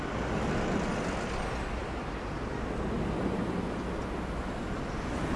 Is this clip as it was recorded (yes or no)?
yes